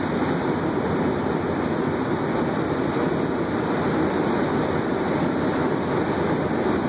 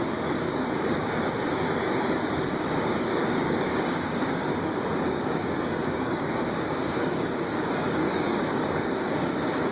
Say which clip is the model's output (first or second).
second